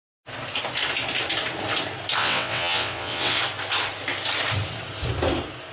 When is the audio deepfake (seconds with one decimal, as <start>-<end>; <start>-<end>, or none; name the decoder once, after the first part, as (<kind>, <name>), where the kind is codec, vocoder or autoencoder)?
2.2-3.4 (vocoder, WaveNeXt)